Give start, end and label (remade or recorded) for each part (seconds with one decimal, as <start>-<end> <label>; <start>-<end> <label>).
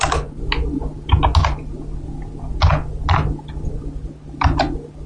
0.0-5.1 recorded